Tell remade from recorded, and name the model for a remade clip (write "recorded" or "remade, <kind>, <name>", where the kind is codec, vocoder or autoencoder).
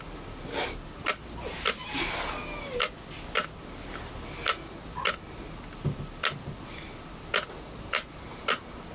recorded